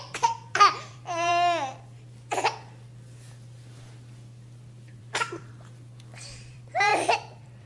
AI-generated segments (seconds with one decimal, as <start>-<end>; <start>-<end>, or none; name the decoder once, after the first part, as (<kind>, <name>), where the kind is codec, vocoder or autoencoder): 0.0-1.3 (vocoder, BigVGAN v2); 5.0-5.5; 6.5-7.7